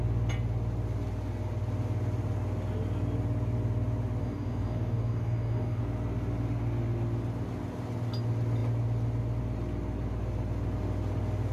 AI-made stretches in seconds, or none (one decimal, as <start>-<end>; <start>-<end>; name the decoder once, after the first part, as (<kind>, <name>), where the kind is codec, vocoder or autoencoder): 4.2-5.8 (codec, DAC)